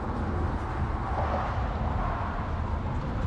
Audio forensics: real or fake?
real